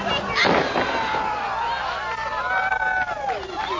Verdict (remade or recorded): recorded